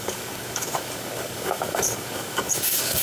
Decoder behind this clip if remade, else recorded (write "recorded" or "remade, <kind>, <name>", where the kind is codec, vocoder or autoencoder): remade, codec, DAC